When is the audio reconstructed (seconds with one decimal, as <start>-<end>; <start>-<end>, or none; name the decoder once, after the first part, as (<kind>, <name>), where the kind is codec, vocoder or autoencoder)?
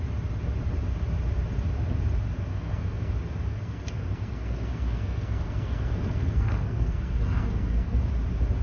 2.5-3.1 (codec, SNAC); 3.5-8.0